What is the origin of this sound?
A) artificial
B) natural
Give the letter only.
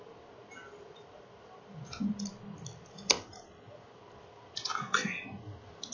B